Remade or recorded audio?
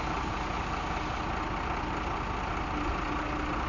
recorded